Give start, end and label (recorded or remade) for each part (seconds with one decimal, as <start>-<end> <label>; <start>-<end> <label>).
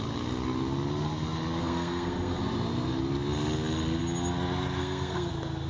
0.0-1.6 recorded; 1.6-2.4 remade; 2.4-4.8 recorded; 4.8-5.3 remade; 5.3-5.7 recorded